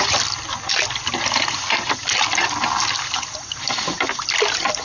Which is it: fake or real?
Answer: real